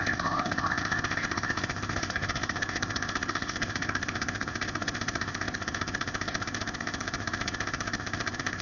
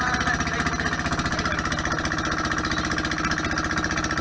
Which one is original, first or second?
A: second